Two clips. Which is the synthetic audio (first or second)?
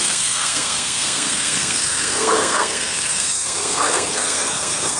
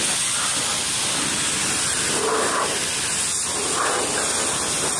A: first